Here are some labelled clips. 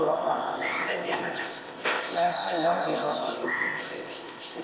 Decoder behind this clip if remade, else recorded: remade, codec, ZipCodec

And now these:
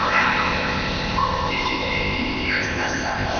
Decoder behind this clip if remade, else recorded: remade, codec, ZipCodec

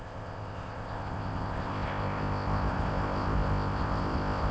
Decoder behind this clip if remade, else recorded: remade, codec, ZipCodec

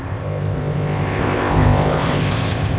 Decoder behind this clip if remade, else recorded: remade, codec, ZipCodec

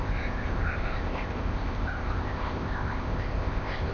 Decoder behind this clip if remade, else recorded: remade, codec, ZipCodec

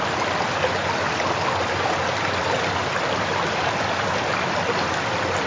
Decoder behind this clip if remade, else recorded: recorded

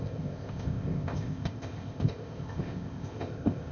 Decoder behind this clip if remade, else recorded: remade, codec, ZipCodec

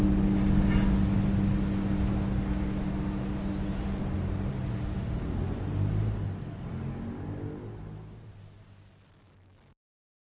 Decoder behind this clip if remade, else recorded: recorded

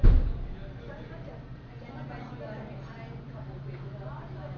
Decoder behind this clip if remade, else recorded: recorded